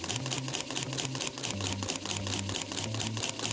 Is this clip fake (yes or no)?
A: no